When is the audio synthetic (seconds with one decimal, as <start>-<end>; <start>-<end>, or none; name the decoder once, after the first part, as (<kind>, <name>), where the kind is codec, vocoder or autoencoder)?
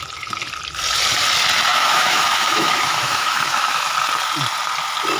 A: 1.7-3.9 (autoencoder, DAC-VAE)